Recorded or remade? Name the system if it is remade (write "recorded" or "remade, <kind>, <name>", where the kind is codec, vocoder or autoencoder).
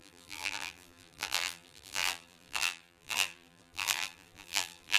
remade, vocoder, BigVGAN v2